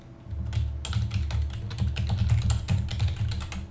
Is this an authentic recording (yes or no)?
yes